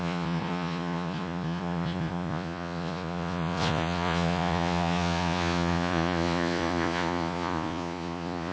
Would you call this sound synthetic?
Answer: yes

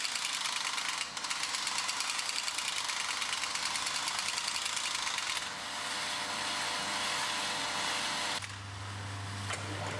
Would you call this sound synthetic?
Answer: no